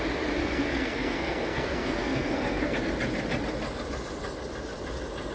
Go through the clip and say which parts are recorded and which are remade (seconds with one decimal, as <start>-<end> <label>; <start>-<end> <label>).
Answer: 0.0-0.4 recorded; 0.4-2.8 remade; 2.8-5.3 recorded